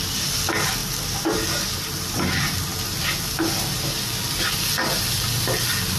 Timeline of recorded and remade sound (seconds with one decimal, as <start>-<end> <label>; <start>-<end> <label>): 0.0-6.0 recorded